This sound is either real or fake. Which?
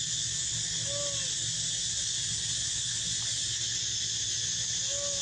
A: real